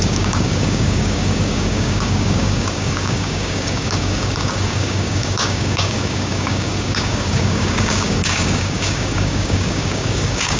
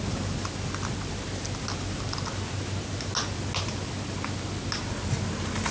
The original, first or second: second